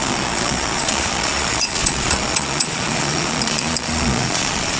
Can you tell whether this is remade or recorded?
remade